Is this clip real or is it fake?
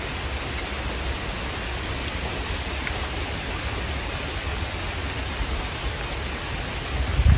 real